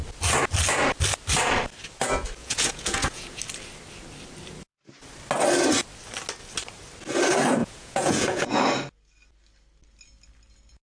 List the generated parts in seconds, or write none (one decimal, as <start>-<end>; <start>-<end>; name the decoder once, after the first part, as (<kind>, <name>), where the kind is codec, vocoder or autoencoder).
2.4-3.4 (vocoder, Vocos); 7.6-8.6